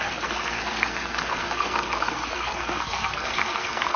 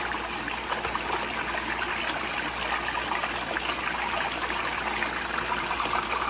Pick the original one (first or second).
second